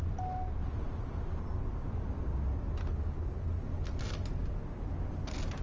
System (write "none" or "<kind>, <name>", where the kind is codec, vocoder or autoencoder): none